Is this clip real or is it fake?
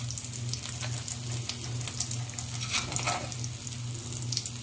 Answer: real